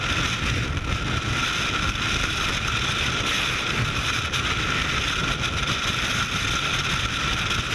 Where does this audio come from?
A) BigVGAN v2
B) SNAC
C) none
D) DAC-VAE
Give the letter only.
C